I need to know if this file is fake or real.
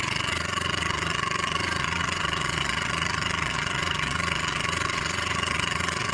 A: fake